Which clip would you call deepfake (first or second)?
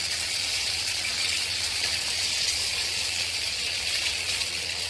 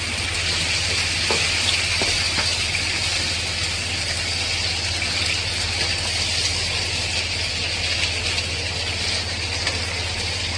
first